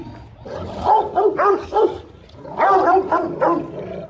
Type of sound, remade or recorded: recorded